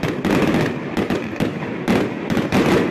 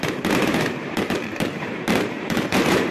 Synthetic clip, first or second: second